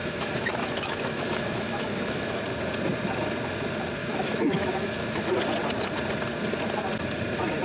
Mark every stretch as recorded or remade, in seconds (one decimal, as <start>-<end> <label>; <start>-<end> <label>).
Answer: 0.0-2.4 remade; 2.4-4.0 recorded; 4.0-5.3 remade; 5.3-7.6 recorded